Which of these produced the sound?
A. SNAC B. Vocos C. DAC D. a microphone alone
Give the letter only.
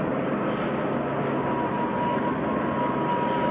D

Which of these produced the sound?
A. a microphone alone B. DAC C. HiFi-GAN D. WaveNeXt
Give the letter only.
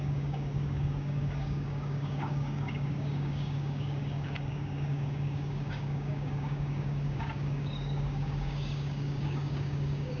B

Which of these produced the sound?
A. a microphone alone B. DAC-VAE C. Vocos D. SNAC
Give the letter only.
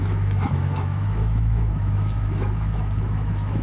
B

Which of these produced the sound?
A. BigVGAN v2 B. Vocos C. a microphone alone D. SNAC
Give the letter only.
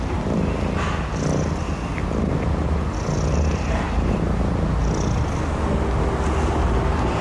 C